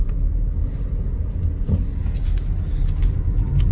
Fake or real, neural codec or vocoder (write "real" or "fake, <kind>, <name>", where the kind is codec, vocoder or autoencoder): real